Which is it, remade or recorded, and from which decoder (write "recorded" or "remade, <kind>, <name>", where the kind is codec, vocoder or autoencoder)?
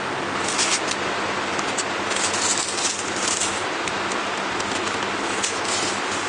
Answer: recorded